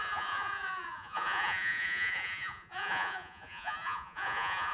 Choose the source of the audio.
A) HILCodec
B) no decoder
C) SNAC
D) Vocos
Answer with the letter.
D